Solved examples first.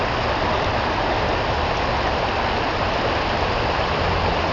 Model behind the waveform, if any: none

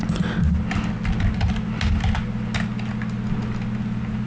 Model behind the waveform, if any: none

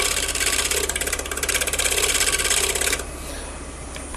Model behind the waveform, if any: none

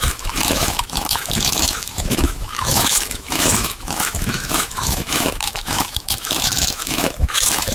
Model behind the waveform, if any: autoencoder, DAC-VAE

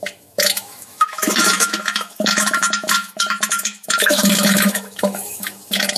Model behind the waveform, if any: autoencoder, DAC-VAE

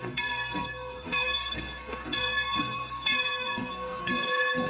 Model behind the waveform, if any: codec, SNAC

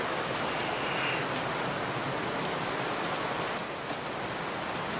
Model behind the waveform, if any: none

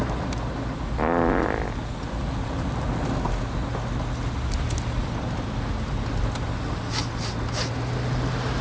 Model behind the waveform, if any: none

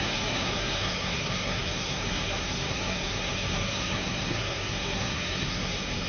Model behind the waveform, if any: codec, SNAC